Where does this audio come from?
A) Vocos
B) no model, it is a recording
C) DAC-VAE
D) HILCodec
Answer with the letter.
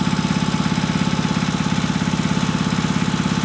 B